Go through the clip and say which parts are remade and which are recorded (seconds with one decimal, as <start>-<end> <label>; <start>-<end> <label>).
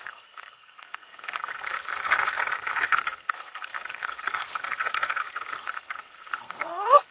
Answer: 0.0-7.1 remade